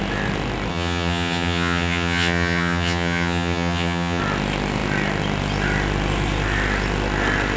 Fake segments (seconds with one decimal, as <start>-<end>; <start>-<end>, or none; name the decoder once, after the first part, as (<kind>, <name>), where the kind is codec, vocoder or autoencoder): 0.7-4.2 (vocoder, HiFi-GAN)